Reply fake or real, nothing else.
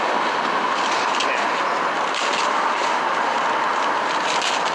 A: real